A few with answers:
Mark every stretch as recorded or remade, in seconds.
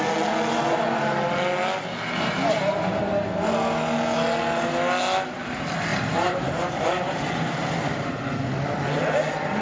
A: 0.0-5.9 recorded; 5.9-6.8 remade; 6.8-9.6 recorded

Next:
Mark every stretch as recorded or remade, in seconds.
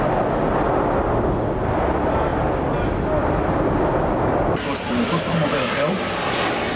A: 0.0-6.8 recorded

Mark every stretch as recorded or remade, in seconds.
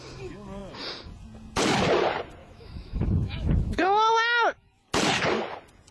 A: 0.0-2.4 recorded; 2.4-4.9 remade; 4.9-5.9 recorded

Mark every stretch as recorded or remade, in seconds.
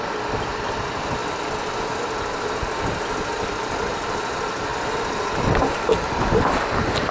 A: 0.0-7.1 recorded